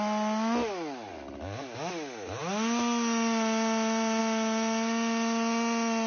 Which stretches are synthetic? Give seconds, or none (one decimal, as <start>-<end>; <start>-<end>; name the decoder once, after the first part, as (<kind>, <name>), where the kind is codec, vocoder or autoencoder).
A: none